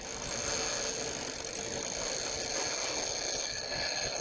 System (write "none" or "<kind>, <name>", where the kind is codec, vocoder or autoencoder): none